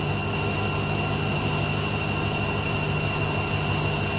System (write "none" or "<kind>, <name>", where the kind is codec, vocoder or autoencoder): none